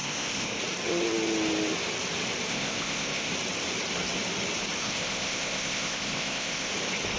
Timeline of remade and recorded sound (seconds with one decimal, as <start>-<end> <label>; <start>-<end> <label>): 0.0-0.6 remade; 0.6-2.5 recorded; 2.5-3.3 remade; 3.3-4.8 recorded; 4.8-6.7 remade; 6.7-7.2 recorded